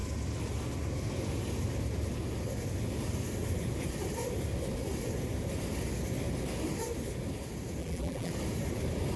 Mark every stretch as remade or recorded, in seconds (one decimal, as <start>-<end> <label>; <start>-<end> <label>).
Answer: 0.0-7.8 recorded; 7.8-8.3 remade; 8.3-9.2 recorded